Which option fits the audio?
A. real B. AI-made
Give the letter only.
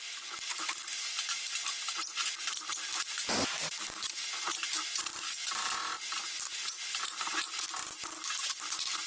A